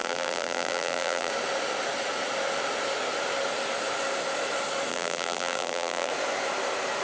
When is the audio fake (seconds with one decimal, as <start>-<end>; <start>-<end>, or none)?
0.0-1.3; 4.9-6.1